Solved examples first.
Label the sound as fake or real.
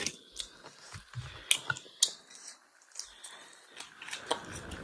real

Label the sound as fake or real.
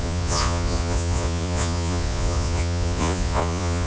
fake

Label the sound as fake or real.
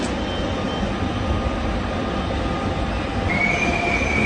real